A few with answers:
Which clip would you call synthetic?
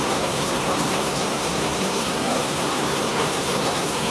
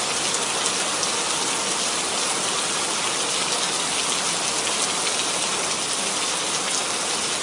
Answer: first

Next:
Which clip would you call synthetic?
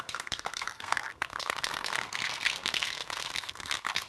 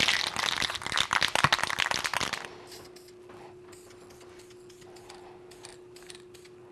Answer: first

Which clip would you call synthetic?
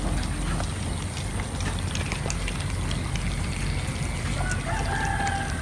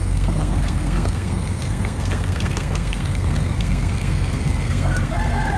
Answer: second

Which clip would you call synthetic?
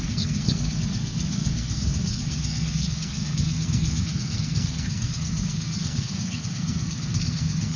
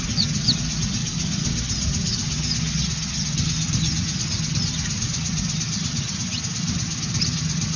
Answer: first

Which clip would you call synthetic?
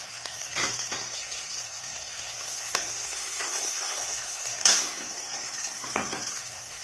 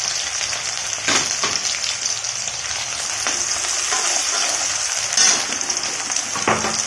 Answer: first